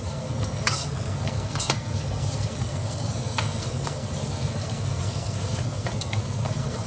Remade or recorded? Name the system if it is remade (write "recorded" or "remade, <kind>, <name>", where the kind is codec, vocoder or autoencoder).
remade, codec, SNAC